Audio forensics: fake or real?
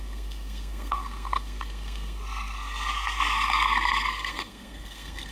fake